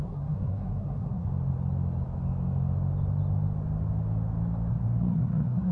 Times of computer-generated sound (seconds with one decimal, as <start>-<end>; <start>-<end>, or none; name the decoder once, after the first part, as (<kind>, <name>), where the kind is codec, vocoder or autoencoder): 0.0-1.3 (codec, SNAC); 4.7-5.7